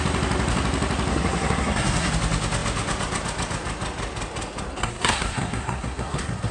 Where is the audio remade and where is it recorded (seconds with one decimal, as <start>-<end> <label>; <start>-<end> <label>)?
0.0-1.1 recorded; 1.1-2.1 remade; 2.1-4.8 recorded; 4.8-6.5 remade